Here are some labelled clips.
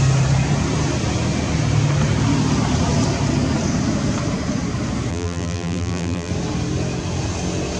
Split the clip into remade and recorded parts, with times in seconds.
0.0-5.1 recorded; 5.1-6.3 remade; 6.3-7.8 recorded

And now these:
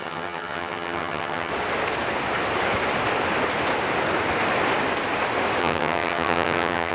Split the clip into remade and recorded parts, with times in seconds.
0.0-1.5 remade; 1.5-5.6 recorded; 5.6-6.9 remade

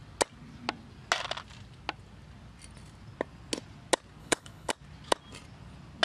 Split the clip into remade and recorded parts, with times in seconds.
0.0-4.2 recorded; 4.2-4.7 remade; 4.7-6.0 recorded

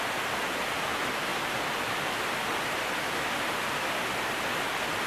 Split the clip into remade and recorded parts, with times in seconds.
0.0-1.3 recorded; 1.3-4.4 remade; 4.4-5.1 recorded

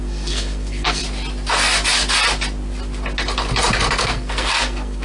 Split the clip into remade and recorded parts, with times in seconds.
0.0-1.0 remade; 1.0-4.0 recorded; 4.0-5.0 remade